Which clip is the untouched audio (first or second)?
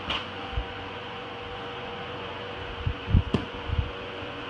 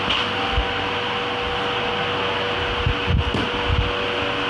second